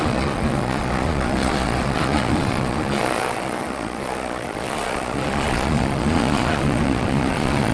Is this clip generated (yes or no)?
yes